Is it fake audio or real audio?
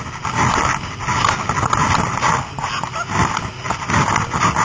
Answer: real